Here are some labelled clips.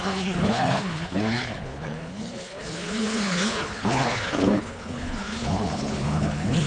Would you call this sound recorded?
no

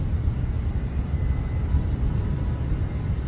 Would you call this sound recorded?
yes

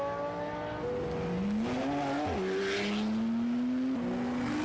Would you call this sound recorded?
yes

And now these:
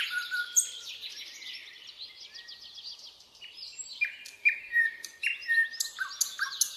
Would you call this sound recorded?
yes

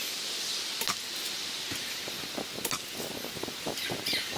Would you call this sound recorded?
yes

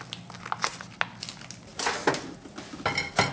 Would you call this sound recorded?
yes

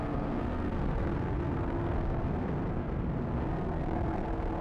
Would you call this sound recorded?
no